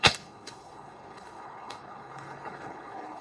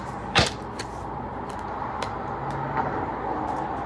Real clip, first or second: second